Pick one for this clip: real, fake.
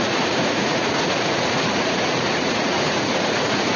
fake